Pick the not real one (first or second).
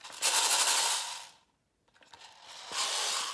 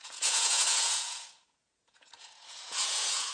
second